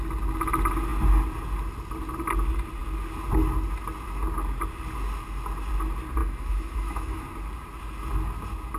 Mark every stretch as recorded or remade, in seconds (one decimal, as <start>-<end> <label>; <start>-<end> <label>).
0.0-6.2 recorded; 6.2-7.2 remade; 7.2-8.8 recorded